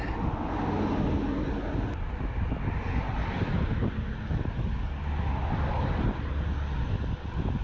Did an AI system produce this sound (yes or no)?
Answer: no